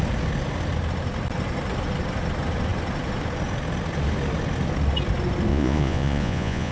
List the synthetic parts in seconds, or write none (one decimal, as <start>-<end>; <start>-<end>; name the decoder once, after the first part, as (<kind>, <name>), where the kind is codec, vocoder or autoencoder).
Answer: 5.5-6.7 (vocoder, Vocos)